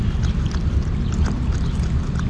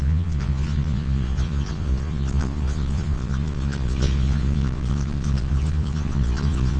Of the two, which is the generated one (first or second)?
second